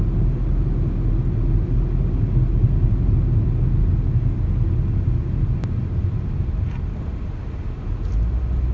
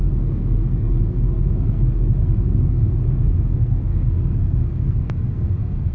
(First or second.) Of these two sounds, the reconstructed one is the second